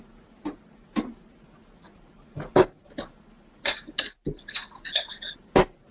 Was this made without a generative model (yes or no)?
yes